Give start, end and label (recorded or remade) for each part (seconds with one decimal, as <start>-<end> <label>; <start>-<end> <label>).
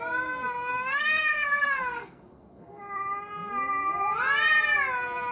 0.0-0.7 recorded; 0.7-2.8 remade; 2.8-5.3 recorded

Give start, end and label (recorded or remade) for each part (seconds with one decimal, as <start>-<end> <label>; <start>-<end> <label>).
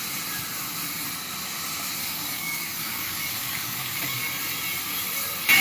0.0-2.0 recorded; 2.0-4.2 remade; 4.2-5.6 recorded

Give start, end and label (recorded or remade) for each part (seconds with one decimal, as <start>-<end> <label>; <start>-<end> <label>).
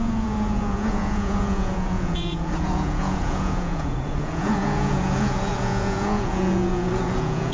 0.0-7.5 remade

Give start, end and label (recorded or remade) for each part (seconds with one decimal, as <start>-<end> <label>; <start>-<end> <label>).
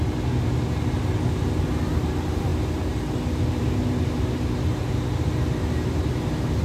0.0-6.6 recorded